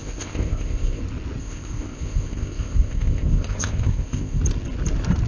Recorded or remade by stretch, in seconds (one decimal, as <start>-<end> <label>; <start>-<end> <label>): 0.0-1.0 remade; 1.0-1.4 recorded; 1.4-4.4 remade; 4.4-5.3 recorded